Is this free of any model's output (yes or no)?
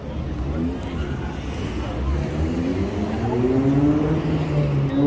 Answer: yes